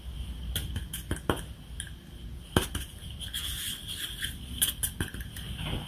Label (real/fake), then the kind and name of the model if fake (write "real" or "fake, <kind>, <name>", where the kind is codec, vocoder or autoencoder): real